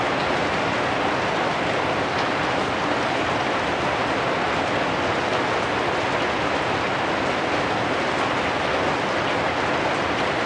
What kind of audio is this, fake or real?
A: real